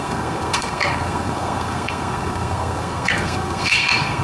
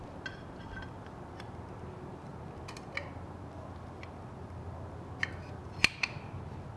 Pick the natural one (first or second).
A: second